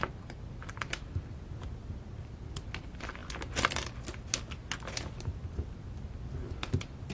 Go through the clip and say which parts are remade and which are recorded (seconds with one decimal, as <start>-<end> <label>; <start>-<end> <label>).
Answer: 0.0-7.1 recorded